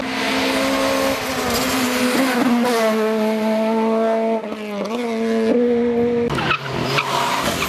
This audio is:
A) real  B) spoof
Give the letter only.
A